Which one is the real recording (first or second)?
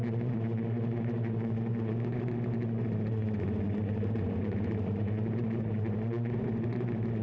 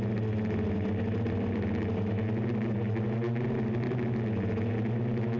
second